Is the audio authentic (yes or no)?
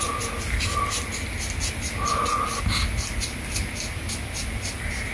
yes